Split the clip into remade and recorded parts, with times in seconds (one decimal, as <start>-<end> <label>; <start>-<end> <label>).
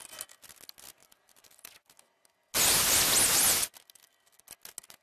0.0-5.0 recorded